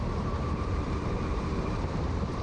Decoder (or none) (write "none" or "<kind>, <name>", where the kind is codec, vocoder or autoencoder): vocoder, BigVGAN v2